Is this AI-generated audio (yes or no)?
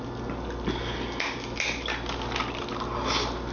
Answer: no